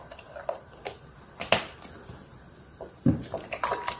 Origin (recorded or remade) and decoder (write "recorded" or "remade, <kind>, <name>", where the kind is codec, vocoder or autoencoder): recorded